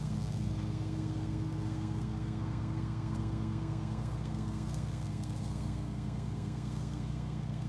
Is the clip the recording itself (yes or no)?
no